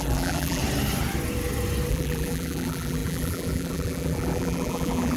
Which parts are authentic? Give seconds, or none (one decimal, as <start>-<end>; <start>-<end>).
0.6-1.9